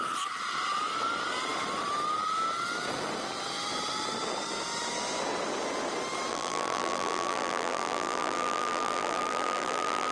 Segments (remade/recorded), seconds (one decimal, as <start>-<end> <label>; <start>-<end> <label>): 0.0-6.3 recorded; 6.3-10.1 remade